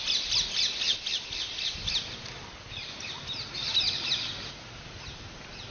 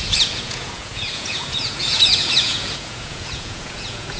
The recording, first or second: first